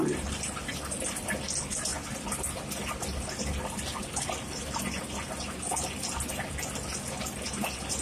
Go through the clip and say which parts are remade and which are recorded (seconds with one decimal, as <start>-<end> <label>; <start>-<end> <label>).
0.0-8.0 recorded